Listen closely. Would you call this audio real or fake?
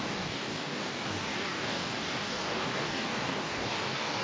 fake